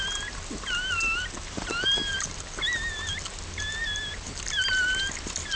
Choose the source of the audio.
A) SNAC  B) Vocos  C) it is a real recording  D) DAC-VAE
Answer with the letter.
C